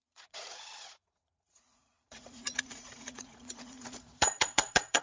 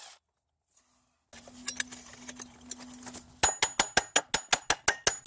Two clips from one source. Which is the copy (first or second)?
first